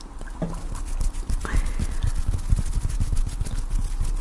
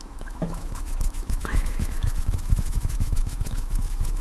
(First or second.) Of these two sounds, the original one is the first